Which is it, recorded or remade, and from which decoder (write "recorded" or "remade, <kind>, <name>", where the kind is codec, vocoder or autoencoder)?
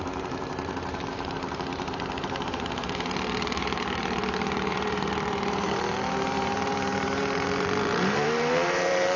remade, vocoder, BigVGAN v2